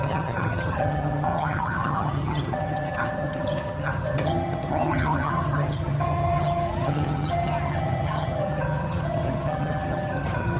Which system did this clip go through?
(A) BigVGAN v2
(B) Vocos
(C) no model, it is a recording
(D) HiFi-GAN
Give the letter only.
D